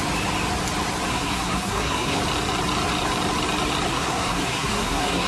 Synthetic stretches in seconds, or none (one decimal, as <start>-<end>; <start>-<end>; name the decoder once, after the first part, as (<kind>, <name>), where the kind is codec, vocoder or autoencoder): 1.1-2.2 (codec, SNAC); 3.9-5.3